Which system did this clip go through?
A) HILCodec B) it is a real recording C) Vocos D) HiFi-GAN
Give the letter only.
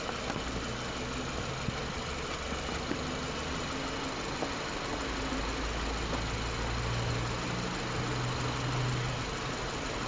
B